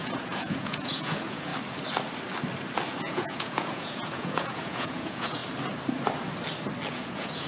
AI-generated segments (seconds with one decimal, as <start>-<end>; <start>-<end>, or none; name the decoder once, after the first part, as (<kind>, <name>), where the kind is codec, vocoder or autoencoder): 0.0-1.5 (vocoder, Vocos); 3.0-5.4; 6.9-7.5